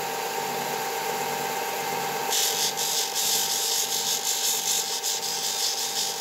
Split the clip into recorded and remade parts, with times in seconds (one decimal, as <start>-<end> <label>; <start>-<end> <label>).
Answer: 0.0-6.2 recorded

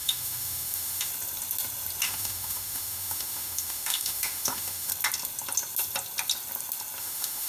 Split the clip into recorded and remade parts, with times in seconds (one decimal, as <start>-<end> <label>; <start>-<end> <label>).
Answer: 0.0-1.1 remade; 1.1-2.0 recorded; 2.0-4.9 remade; 4.9-7.0 recorded; 7.0-7.5 remade